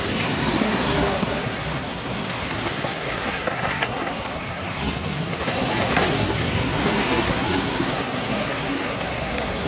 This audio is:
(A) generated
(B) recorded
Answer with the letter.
A